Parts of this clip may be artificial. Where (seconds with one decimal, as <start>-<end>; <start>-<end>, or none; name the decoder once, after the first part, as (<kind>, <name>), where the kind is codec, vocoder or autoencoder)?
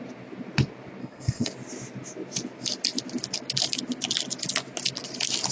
1.0-1.5 (codec, SNAC)